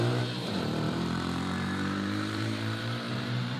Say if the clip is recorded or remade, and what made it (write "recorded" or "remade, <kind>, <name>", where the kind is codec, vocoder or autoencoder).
remade, vocoder, BigVGAN v2